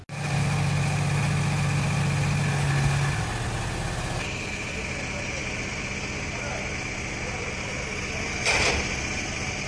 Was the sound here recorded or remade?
recorded